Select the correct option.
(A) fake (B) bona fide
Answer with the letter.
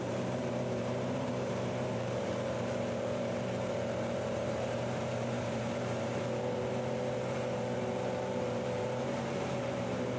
A